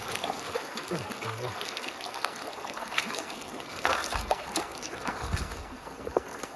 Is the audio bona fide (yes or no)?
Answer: no